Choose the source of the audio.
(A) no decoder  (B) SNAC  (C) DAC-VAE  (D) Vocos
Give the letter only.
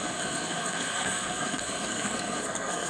B